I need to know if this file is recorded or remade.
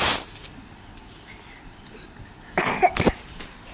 recorded